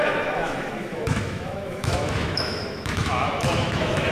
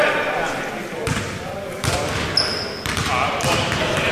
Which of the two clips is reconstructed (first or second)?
first